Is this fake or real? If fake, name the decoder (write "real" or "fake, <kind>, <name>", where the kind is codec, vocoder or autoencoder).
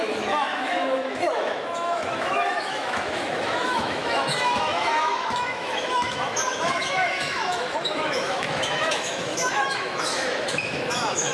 fake, autoencoder, DAC-VAE